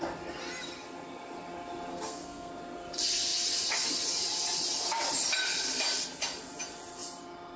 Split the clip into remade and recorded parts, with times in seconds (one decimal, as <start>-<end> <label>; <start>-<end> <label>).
0.0-1.9 recorded; 1.9-2.5 remade; 2.5-7.6 recorded